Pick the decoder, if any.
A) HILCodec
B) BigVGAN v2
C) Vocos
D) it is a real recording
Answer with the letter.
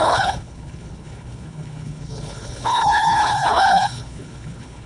A